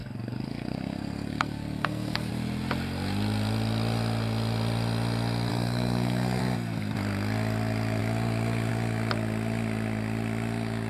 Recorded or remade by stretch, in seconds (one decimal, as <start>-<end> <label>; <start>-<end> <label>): 0.0-2.3 remade; 2.3-5.5 recorded; 5.5-6.4 remade; 6.4-10.9 recorded